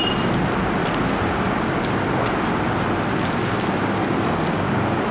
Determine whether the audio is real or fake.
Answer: real